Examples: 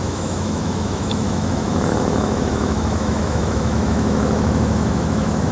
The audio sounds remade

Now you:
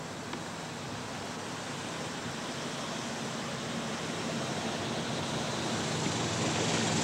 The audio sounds recorded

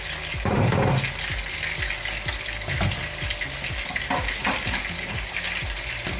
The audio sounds recorded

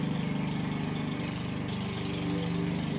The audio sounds recorded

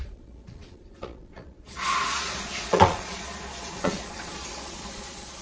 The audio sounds remade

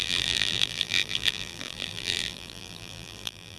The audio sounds remade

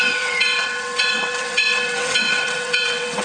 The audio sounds remade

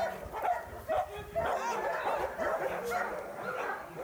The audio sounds recorded